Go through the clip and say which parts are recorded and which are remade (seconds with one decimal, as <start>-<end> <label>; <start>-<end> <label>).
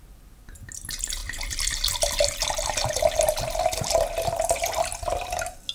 0.0-5.7 recorded